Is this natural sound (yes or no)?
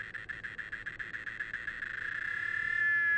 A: yes